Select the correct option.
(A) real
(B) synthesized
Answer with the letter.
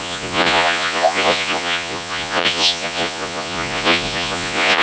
B